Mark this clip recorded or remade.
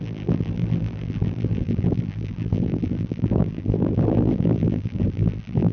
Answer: remade